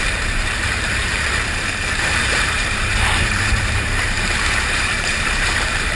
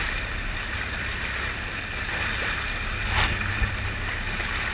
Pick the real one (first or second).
second